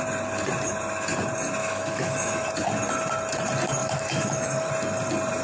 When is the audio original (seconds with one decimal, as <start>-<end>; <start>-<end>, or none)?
0.0-1.6; 2.5-3.8; 4.7-5.4